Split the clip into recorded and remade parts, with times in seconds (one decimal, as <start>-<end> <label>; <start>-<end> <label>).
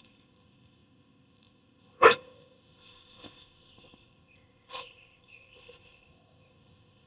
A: 0.0-7.1 remade